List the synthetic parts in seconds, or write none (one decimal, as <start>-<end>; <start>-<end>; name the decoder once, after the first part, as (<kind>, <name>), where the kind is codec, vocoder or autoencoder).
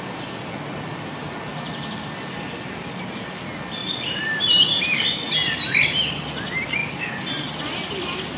3.8-4.4 (vocoder, BigVGAN v2); 6.8-7.3